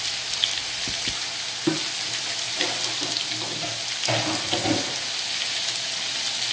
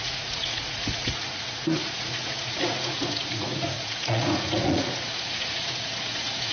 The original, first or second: first